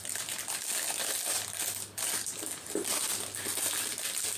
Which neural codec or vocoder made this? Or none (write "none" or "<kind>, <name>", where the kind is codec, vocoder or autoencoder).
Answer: none